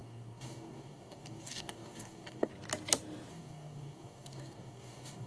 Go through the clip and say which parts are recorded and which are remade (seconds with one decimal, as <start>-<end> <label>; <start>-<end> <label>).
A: 0.0-2.5 remade; 2.5-3.3 recorded; 3.3-5.3 remade